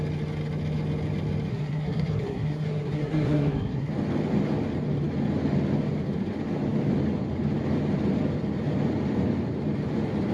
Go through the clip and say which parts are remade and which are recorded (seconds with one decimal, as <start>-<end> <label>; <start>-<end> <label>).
0.0-1.5 recorded; 1.5-3.9 remade; 3.9-10.3 recorded